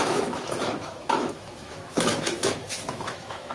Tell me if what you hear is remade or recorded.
remade